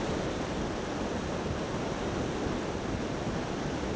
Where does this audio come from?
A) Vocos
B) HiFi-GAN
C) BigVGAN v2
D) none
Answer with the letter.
D